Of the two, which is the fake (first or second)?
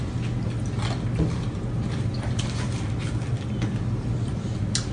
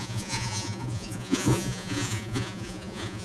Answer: second